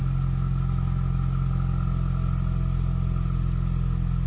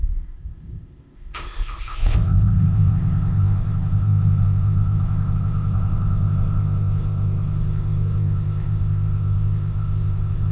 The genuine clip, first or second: first